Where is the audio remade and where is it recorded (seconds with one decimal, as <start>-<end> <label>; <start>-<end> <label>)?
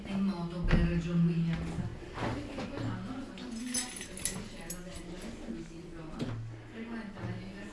0.0-7.7 recorded